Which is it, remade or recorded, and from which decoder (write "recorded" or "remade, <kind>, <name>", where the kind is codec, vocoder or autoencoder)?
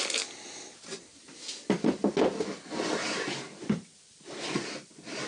recorded